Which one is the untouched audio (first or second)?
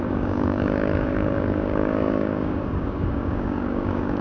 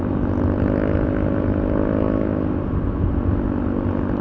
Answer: second